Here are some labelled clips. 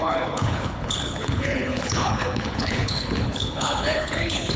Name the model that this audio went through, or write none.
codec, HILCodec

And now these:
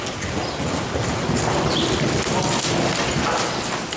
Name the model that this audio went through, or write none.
none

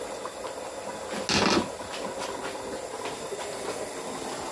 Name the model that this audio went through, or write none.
none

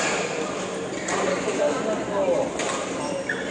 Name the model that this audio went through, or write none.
none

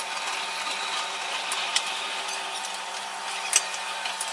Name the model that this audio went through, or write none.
none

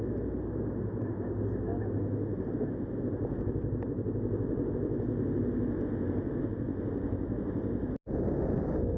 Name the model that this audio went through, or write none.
none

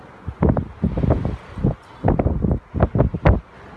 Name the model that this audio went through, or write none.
none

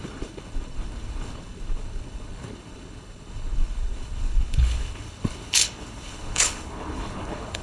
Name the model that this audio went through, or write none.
codec, HILCodec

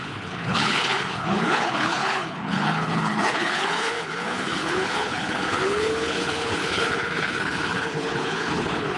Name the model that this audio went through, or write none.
codec, HILCodec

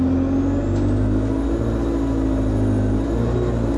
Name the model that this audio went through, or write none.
none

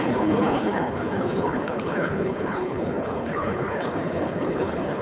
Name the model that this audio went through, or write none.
codec, HILCodec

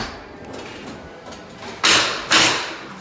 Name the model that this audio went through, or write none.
none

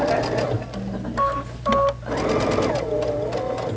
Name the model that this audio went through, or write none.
none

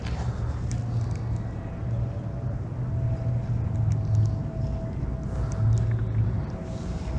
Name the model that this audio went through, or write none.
none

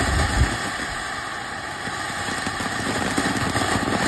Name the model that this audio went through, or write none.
none